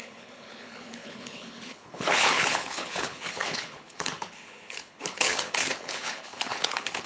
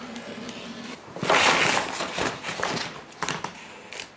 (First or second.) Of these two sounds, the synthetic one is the first